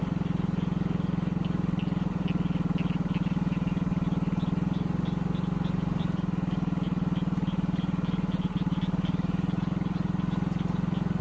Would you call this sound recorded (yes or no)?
yes